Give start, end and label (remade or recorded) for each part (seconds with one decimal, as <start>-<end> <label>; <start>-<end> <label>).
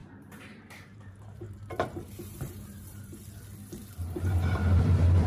0.0-3.2 remade; 3.2-4.0 recorded; 4.0-5.3 remade